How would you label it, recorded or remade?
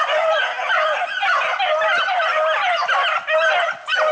recorded